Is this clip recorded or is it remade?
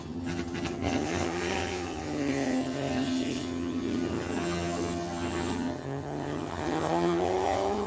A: remade